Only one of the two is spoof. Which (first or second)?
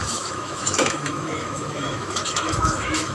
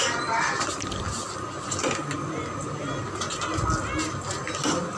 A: first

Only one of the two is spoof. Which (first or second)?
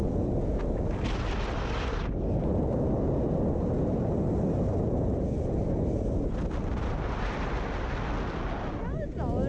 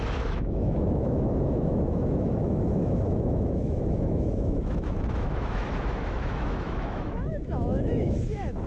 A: second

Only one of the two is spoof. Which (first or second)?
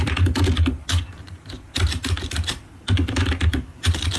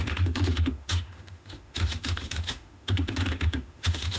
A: second